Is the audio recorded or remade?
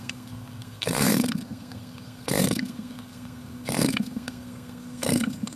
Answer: remade